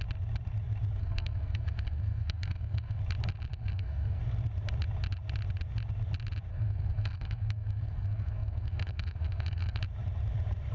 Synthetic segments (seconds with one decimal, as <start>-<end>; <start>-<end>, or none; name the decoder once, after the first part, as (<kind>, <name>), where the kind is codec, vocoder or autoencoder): 1.0-3.0 (codec, SNAC); 3.5-4.2; 6.5-9.8